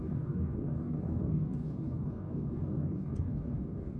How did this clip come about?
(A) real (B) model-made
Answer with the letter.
B